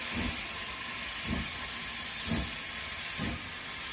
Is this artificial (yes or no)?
no